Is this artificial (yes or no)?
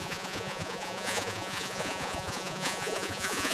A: yes